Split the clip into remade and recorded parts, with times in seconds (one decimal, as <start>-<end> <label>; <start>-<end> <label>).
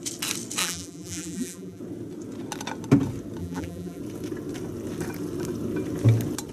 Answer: 0.0-0.6 recorded; 0.6-1.8 remade; 1.8-3.4 recorded; 3.4-4.0 remade; 4.0-6.5 recorded